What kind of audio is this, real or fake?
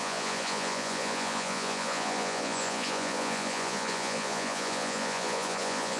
fake